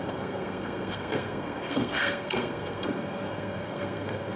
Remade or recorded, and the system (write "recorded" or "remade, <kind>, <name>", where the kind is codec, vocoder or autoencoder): remade, codec, SNAC